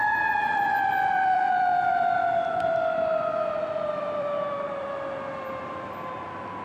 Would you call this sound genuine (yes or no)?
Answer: no